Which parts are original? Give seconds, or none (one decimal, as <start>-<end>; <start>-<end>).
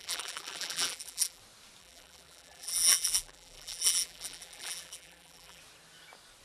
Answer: 1.4-1.8; 5.6-6.4